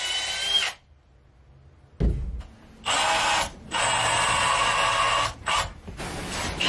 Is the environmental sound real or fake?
real